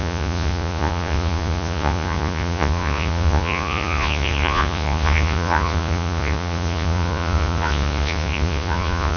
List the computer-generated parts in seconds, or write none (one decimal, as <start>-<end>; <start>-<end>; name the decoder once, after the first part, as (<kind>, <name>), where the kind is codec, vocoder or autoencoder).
0.0-9.2 (vocoder, Vocos)